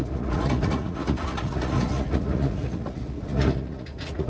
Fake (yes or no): yes